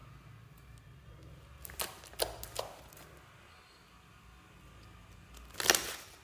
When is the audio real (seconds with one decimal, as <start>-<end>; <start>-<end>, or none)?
0.0-6.2